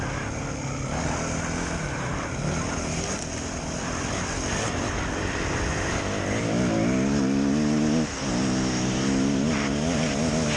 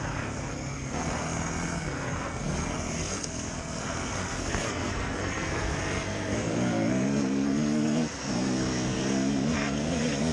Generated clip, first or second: second